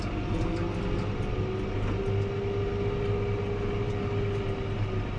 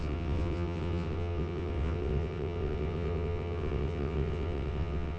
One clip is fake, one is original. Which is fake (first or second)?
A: second